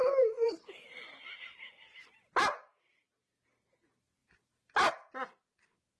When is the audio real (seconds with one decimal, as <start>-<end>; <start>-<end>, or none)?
0.5-4.2; 5.1-6.0